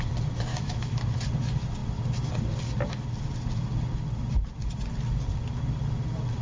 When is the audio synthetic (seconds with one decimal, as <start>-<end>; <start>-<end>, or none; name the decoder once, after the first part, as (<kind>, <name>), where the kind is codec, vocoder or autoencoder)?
0.5-1.0 (autoencoder, DAC-VAE)